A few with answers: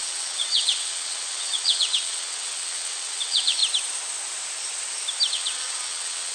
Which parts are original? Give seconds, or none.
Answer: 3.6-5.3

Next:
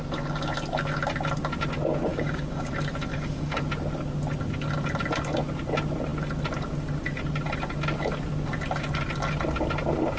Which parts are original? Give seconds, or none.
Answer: 0.0-2.1; 2.7-3.1; 3.6-10.2